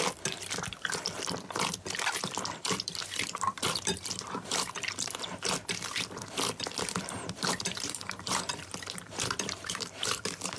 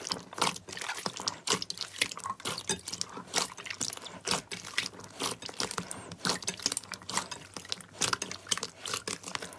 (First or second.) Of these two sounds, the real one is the second